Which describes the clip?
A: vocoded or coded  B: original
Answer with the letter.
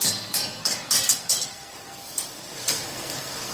A